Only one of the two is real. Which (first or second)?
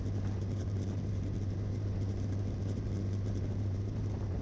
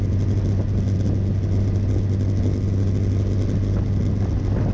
second